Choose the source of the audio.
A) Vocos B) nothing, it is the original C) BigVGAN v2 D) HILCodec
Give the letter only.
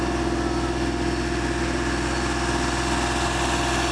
B